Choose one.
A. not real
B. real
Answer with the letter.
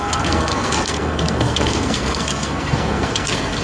A